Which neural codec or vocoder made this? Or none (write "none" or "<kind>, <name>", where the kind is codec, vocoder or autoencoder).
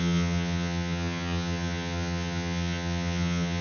vocoder, HiFi-GAN